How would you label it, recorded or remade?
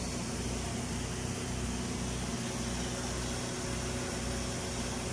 recorded